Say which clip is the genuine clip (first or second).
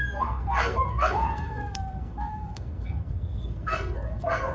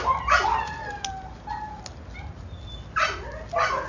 second